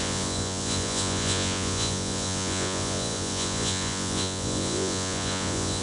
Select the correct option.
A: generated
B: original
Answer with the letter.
A